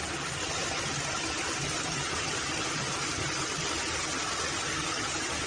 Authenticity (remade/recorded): recorded